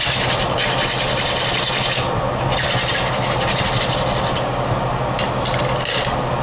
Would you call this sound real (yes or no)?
yes